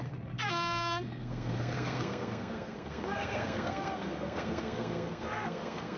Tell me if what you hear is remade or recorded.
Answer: remade